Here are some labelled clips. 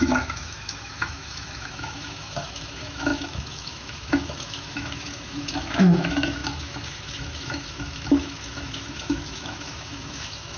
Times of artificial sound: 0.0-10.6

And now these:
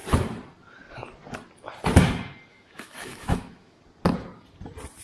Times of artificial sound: 2.5-3.8

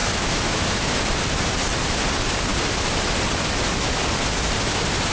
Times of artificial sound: 0.0-1.0

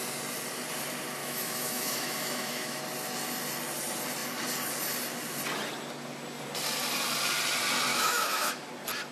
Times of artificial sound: 1.2-2.8; 7.9-8.7